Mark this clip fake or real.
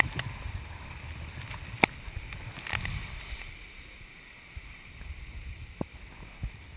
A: real